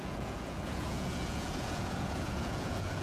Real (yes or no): no